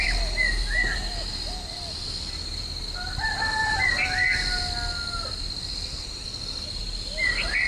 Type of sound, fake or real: real